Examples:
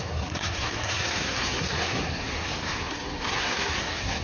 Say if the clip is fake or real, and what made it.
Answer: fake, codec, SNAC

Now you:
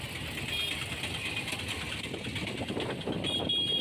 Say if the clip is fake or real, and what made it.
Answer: real